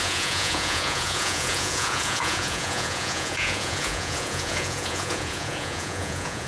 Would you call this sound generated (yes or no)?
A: yes